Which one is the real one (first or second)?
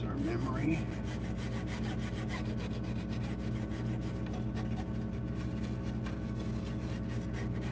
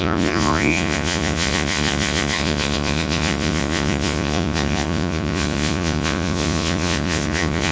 first